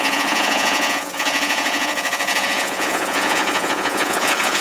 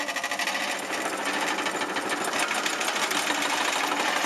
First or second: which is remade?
first